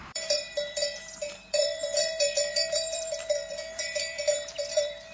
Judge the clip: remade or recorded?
remade